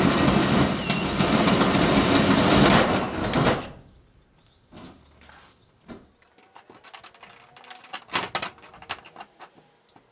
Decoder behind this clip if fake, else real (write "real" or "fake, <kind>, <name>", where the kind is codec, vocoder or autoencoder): real